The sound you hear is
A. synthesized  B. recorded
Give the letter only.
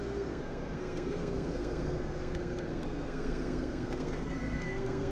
A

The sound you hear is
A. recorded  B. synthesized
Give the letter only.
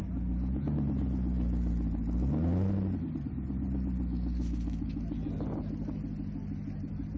A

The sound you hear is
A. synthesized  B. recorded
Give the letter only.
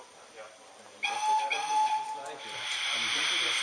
A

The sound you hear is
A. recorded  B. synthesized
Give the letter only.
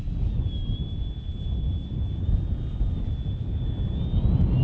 A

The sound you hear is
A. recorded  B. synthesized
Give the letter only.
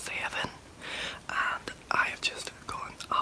A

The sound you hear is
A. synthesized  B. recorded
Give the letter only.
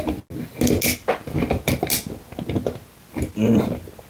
B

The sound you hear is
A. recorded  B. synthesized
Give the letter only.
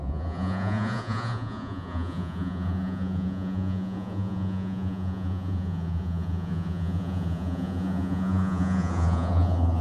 B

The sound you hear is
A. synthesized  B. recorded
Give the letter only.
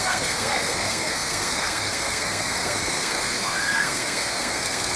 A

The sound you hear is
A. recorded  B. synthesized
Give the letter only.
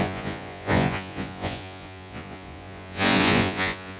B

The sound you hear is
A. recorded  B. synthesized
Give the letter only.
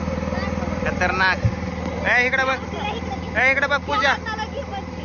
A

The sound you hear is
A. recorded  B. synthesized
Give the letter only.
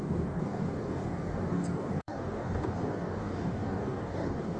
B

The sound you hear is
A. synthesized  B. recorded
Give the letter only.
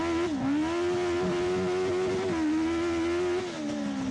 B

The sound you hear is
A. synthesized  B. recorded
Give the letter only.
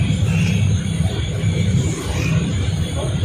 A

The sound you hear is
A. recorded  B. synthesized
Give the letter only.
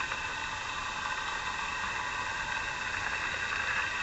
A